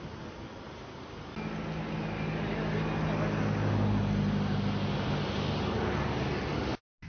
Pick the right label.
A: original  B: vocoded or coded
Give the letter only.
A